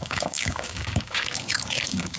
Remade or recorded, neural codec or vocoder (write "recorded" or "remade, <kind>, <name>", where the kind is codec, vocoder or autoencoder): remade, codec, DAC